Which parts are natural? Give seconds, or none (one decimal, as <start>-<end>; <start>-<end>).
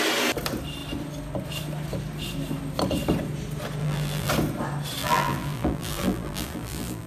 0.0-3.8; 4.3-5.0